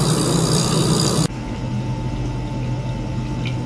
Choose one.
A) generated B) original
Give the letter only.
B